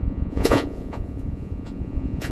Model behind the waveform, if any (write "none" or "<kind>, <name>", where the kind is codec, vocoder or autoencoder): vocoder, Vocos